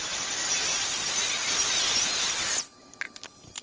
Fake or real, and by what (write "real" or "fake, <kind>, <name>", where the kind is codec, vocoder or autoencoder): real